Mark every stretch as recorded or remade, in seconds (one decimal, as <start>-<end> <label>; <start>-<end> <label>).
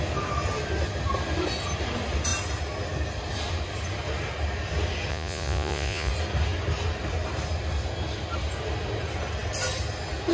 0.0-5.1 recorded; 5.1-6.1 remade; 6.1-10.3 recorded